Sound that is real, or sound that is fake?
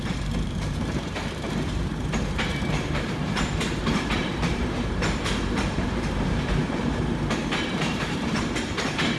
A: fake